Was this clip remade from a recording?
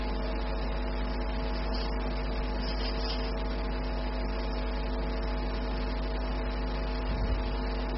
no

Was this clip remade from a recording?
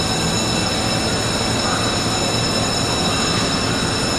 no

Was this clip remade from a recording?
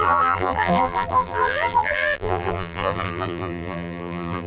yes